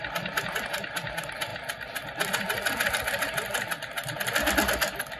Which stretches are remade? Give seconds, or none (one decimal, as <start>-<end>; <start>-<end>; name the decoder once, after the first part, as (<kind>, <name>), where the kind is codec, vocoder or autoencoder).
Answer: none